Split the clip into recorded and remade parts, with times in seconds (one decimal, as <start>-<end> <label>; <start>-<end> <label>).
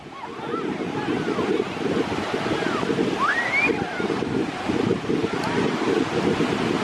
0.0-6.8 recorded